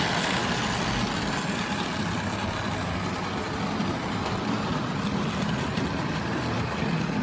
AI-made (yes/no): no